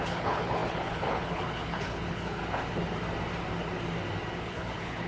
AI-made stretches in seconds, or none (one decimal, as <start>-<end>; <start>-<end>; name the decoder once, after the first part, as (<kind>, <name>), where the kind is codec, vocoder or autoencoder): 0.0-2.4 (codec, HILCodec); 4.4-5.1